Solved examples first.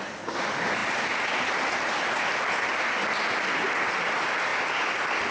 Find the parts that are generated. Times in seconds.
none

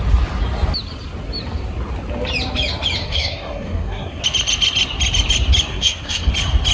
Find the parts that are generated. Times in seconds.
3.0-4.2 (codec, SNAC); 5.7-6.3

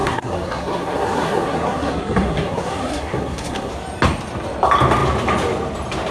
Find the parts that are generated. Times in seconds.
0.0-3.7 (codec, SNAC)